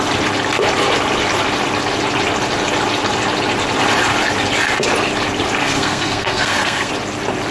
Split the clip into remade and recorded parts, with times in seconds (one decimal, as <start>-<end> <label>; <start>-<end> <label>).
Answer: 0.0-5.6 recorded; 5.6-6.9 remade; 6.9-7.5 recorded